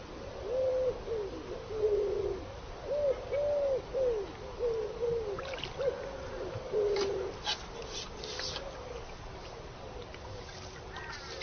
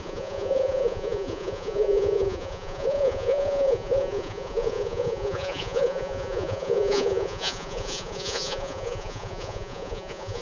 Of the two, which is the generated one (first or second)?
second